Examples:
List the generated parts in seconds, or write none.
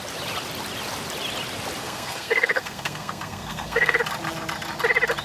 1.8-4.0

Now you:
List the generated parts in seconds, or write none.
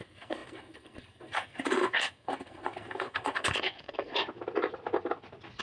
0.0-4.2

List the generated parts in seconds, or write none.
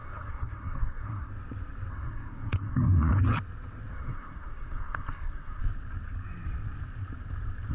0.0-1.3; 1.9-3.2; 3.9-5.6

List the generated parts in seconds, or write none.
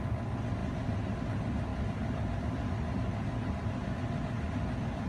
none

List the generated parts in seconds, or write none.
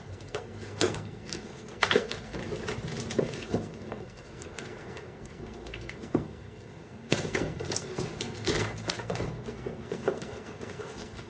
0.0-2.4; 3.2-11.3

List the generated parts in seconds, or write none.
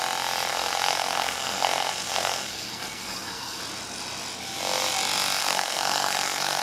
0.5-3.6; 5.4-6.6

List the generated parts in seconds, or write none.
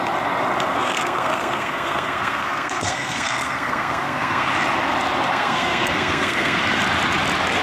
0.7-4.5; 5.3-6.6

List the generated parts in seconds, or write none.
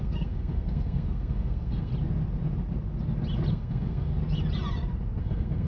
0.0-1.9; 3.5-4.1; 5.2-5.7